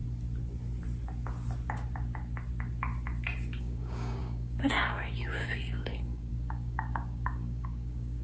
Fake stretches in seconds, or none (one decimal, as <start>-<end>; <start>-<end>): 3.6-8.2